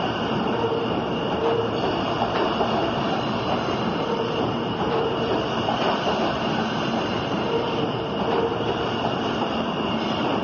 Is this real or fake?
fake